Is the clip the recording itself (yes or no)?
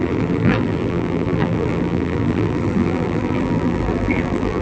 no